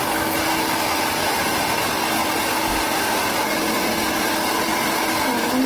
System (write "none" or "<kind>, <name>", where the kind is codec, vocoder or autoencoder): none